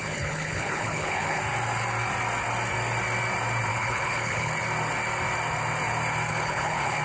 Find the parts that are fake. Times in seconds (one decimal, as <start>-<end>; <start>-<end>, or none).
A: 0.0-1.4; 3.7-4.5; 6.3-7.0